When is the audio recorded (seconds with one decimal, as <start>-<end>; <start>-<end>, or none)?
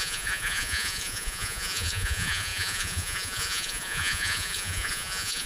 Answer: none